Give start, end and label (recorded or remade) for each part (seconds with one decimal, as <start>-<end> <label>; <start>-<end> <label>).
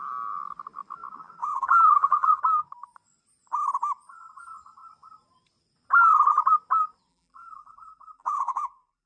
0.0-1.4 recorded; 1.4-2.4 remade; 2.4-7.1 recorded; 7.1-9.1 remade